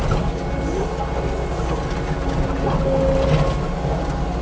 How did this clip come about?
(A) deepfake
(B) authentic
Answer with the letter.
B